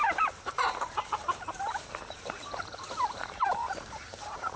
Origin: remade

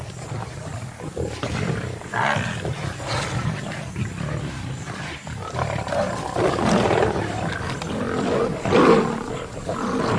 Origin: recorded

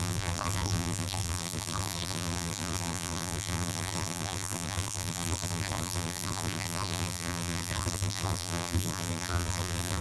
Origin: remade